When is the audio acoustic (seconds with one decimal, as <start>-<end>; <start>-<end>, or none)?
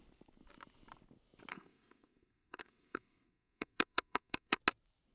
0.0-1.5; 4.6-5.1